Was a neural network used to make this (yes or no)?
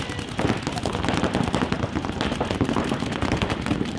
no